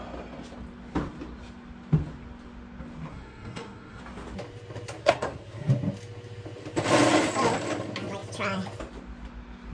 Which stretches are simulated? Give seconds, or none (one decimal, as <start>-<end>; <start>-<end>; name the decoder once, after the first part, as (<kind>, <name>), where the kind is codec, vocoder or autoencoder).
3.1-4.0 (codec, SNAC); 5.0-5.7